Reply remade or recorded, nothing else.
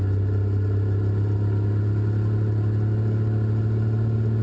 recorded